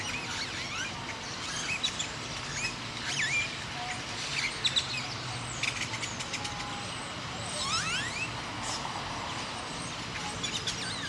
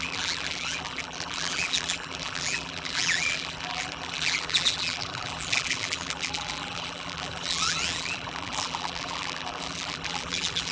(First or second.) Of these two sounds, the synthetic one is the second